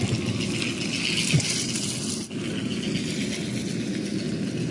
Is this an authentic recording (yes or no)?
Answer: yes